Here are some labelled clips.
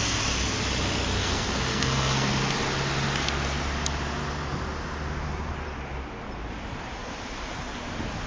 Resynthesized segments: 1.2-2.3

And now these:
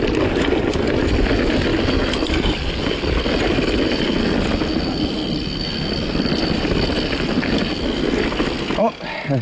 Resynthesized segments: none

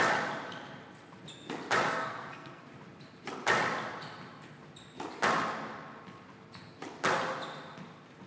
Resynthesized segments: 1.9-2.7

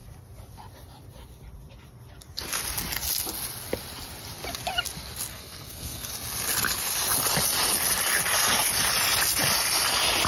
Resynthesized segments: 5.3-6.1

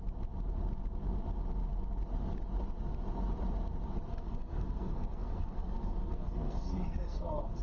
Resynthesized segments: 4.1-7.6

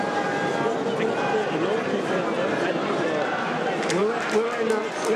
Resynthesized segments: none

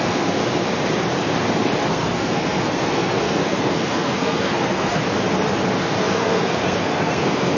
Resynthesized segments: 0.0-0.4; 1.9-5.0; 5.8-7.6